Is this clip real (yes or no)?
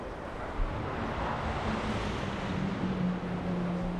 yes